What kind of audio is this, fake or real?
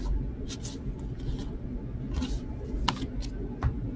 real